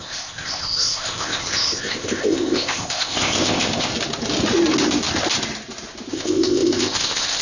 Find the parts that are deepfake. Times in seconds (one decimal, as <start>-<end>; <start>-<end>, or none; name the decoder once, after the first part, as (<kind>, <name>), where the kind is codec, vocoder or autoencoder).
0.0-3.9 (codec, ZipCodec); 6.1-7.4